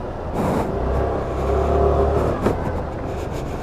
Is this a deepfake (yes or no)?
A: no